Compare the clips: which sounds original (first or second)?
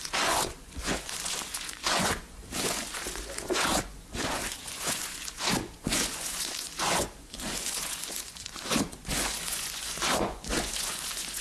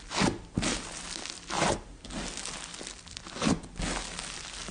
second